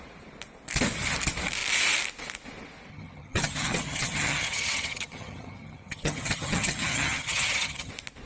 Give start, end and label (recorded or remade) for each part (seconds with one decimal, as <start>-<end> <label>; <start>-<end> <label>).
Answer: 0.0-2.9 recorded; 2.9-7.9 remade; 7.9-8.3 recorded